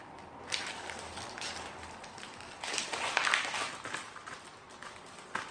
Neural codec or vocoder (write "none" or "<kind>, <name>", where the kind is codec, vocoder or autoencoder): none